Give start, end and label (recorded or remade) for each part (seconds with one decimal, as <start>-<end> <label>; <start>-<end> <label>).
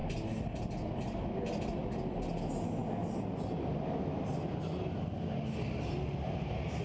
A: 0.0-6.8 recorded